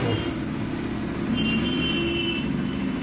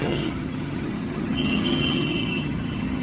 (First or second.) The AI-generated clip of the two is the second